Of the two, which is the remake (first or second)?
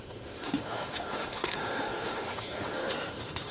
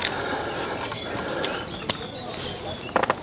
first